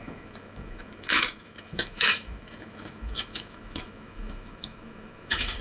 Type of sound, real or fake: fake